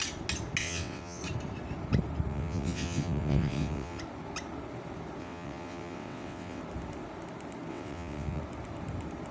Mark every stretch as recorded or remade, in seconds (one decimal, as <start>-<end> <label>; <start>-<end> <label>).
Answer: 0.0-0.6 recorded; 0.6-1.2 remade; 1.2-2.3 recorded; 2.3-4.0 remade; 4.0-5.2 recorded; 5.2-6.6 remade; 6.6-7.7 recorded; 7.7-8.4 remade; 8.4-9.3 recorded

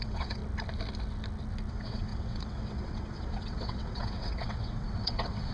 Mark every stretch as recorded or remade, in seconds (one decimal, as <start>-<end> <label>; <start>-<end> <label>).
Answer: 0.0-0.4 remade; 0.4-1.7 recorded; 1.7-5.5 remade

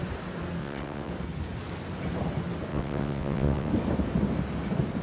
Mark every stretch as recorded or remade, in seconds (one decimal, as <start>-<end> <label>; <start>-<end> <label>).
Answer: 0.0-0.6 recorded; 0.6-1.1 remade; 1.1-2.7 recorded; 2.7-3.7 remade; 3.7-5.0 recorded

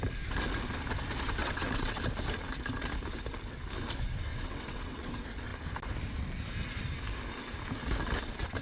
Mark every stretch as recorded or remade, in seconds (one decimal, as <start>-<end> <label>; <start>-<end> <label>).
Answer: 0.0-1.4 recorded; 1.4-2.0 remade; 2.0-4.3 recorded; 4.3-5.1 remade; 5.1-8.6 recorded

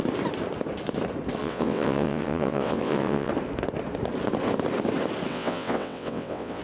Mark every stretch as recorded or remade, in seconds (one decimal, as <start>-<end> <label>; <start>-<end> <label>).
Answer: 0.0-1.4 recorded; 1.4-3.3 remade; 3.3-5.3 recorded; 5.3-6.6 remade

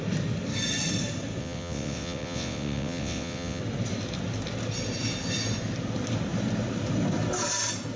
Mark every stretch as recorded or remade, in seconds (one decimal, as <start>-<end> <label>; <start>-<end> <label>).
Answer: 0.0-1.4 recorded; 1.4-3.6 remade; 3.6-8.0 recorded